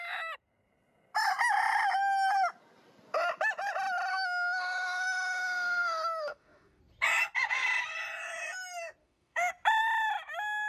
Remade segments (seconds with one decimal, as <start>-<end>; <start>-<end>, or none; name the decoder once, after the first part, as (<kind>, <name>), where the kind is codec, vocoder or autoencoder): 4.1-6.8 (autoencoder, DAC-VAE); 9.0-9.5